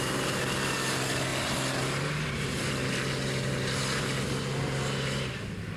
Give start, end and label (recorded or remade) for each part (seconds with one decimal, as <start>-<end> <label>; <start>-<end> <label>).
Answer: 0.0-5.8 recorded